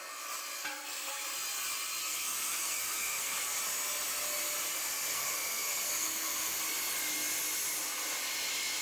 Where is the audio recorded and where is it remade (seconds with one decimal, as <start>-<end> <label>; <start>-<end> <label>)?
0.0-0.7 recorded; 0.7-1.2 remade; 1.2-2.0 recorded; 2.0-3.6 remade; 3.6-5.1 recorded; 5.1-6.6 remade; 6.6-8.8 recorded